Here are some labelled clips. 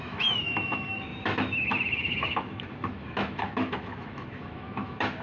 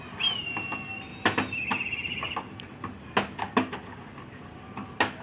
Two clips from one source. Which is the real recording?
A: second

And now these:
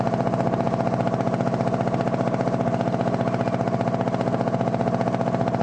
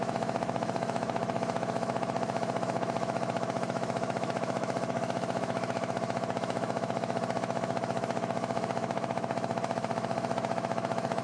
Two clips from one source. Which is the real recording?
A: first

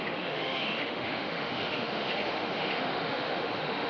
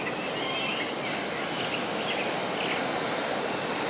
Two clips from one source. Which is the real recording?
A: second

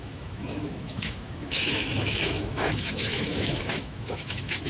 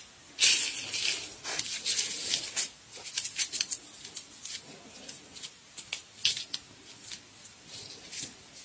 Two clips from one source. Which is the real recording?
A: second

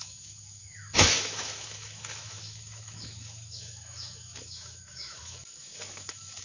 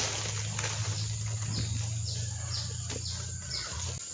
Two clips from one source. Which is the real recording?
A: second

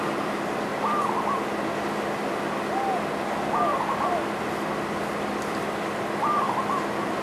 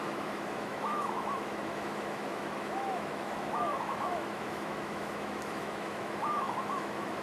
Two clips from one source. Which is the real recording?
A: first